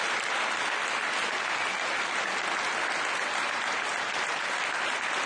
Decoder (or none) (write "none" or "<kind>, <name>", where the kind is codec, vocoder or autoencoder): none